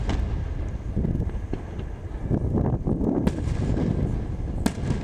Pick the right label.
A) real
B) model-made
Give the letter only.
A